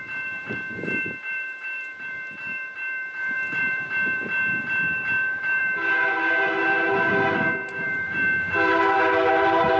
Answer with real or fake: fake